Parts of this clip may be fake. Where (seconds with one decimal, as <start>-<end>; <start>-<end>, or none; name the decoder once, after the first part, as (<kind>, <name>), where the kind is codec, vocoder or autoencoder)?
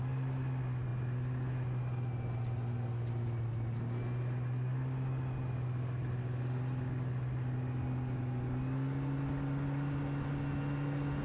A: none